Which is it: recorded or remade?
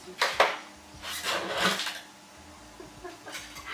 recorded